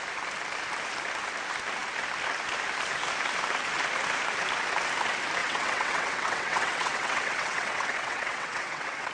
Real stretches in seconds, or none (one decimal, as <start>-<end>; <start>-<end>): 0.0-5.4